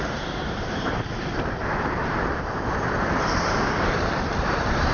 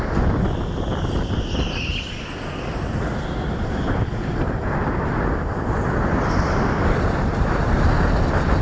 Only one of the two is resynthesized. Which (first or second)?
first